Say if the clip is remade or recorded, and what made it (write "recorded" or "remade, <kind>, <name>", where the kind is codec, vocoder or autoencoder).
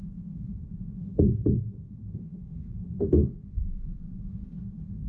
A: remade, autoencoder, DAC-VAE